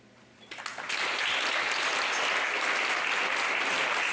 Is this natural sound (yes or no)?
yes